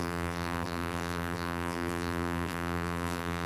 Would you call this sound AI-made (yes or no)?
yes